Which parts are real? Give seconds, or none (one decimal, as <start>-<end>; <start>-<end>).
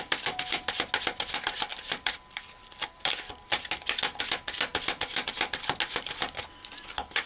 0.0-1.7; 3.3-4.7; 5.3-7.3